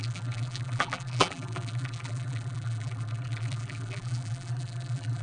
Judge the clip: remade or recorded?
remade